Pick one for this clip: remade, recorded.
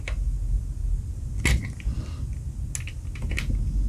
recorded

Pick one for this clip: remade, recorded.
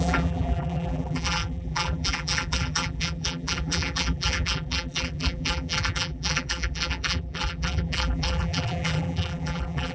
remade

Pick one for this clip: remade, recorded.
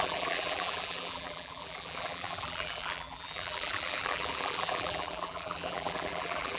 remade